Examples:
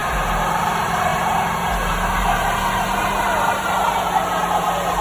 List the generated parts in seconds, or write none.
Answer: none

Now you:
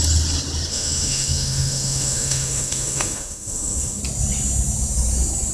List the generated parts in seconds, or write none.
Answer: 0.7-4.0 (autoencoder, DAC-VAE)

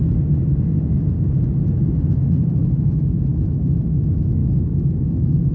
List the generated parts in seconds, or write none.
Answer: 3.3-5.5 (autoencoder, DAC-VAE)

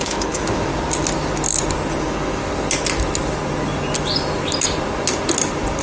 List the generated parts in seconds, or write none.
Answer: 0.0-0.7 (autoencoder, DAC-VAE); 2.0-2.4

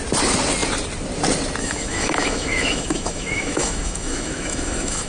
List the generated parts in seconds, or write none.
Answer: 1.6-5.1 (autoencoder, DAC-VAE)